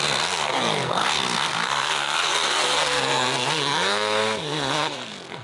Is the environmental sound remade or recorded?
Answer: remade